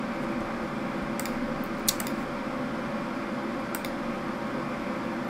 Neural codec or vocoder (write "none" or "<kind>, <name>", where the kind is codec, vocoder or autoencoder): none